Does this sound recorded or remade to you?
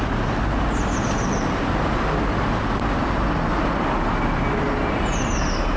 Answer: recorded